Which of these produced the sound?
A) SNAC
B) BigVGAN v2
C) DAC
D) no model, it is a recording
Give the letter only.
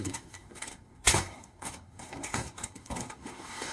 A